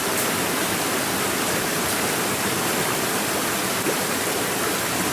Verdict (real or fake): fake